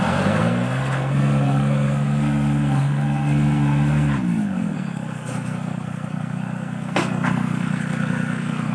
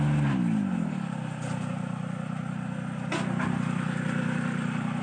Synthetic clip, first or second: first